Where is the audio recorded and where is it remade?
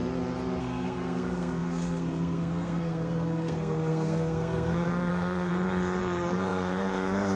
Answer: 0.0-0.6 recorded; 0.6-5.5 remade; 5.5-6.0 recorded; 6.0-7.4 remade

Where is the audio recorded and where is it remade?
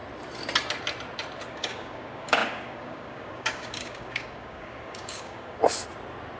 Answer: 0.0-1.5 recorded; 1.5-5.6 remade; 5.6-6.4 recorded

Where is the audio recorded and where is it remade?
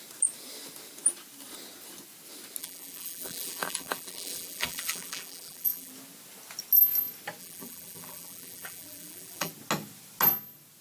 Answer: 0.0-2.6 recorded; 2.6-5.9 remade; 5.9-7.4 recorded; 7.4-9.5 remade; 9.5-10.8 recorded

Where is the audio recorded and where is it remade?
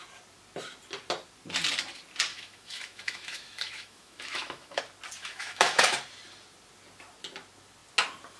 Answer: 0.0-2.3 recorded; 2.3-4.8 remade; 4.8-5.2 recorded; 5.2-5.8 remade; 5.8-8.4 recorded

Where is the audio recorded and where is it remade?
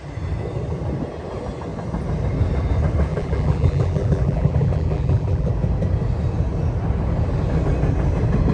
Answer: 0.0-3.1 recorded; 3.1-5.5 remade; 5.5-8.5 recorded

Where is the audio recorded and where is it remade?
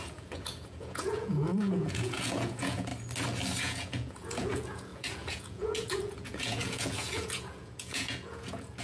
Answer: 0.0-2.9 remade; 2.9-3.6 recorded; 3.6-8.8 remade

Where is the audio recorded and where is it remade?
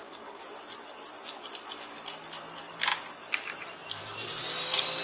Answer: 0.0-1.5 remade; 1.5-2.9 recorded; 2.9-4.4 remade; 4.4-5.0 recorded